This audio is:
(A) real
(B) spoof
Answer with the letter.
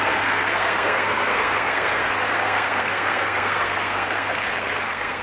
B